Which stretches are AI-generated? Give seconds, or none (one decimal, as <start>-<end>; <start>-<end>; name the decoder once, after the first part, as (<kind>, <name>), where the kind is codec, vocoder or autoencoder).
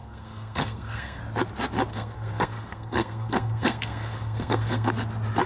0.0-1.2 (codec, SNAC); 1.9-4.9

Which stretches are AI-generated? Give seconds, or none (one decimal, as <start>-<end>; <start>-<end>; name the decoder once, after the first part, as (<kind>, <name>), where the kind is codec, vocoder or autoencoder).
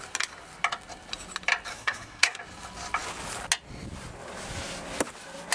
1.7-2.4 (codec, SNAC)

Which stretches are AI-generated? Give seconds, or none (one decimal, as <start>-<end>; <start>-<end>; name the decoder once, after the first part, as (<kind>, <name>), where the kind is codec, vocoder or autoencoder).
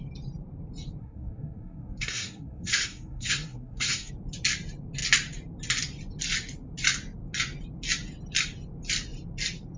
1.0-4.1 (codec, SNAC)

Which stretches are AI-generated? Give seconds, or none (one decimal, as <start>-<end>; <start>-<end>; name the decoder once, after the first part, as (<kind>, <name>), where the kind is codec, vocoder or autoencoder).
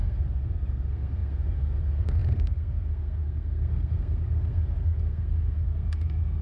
0.0-6.4 (codec, SNAC)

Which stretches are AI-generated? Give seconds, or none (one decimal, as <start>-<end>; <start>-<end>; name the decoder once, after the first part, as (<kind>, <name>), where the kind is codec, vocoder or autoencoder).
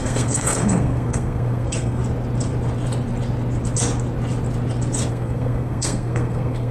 0.0-2.0 (codec, SNAC); 5.1-6.7